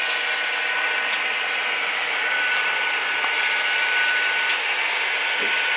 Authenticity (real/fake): real